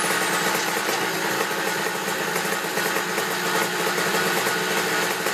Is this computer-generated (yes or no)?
no